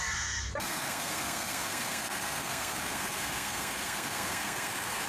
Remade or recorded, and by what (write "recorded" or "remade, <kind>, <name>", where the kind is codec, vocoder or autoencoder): remade, codec, SNAC